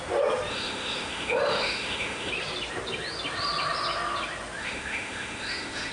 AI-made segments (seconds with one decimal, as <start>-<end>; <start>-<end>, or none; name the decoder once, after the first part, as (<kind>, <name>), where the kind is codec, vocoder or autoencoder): 0.5-2.3 (autoencoder, DAC-VAE); 4.6-5.9